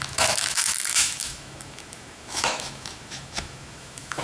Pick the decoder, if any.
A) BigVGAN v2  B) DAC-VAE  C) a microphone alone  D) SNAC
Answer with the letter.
B